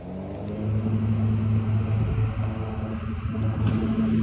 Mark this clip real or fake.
real